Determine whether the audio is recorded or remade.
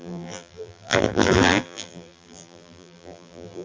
remade